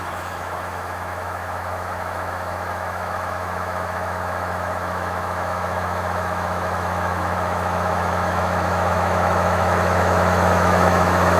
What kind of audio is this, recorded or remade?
remade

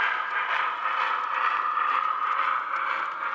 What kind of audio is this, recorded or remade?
recorded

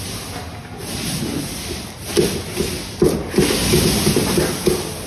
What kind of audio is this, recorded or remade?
recorded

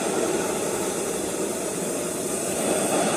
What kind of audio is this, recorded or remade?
remade